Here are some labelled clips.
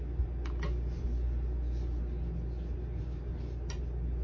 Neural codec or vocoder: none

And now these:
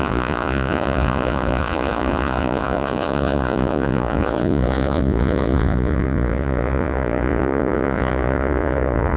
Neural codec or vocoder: vocoder, Vocos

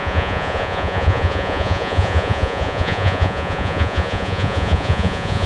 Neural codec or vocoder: vocoder, Vocos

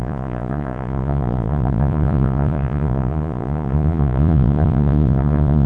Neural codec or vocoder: vocoder, Vocos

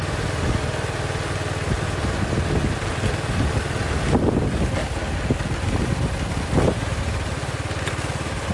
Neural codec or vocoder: none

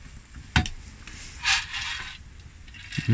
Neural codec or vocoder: none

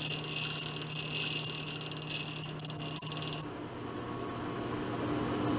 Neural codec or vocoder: none